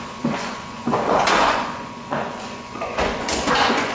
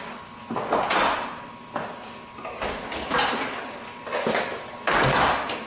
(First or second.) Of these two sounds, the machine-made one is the first